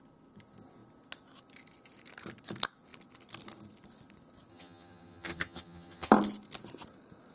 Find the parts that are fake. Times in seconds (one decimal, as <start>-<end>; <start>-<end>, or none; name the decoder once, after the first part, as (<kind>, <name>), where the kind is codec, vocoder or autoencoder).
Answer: 4.5-6.1 (vocoder, HiFi-GAN)